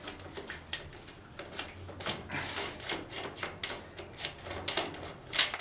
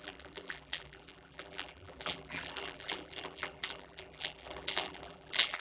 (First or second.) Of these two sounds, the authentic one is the first